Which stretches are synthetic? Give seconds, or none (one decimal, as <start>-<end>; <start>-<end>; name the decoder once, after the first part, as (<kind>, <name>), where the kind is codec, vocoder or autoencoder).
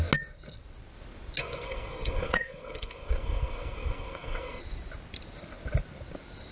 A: 1.4-4.6 (codec, SNAC)